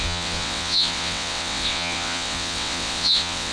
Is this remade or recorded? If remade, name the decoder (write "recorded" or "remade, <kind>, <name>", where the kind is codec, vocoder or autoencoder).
remade, vocoder, WaveNeXt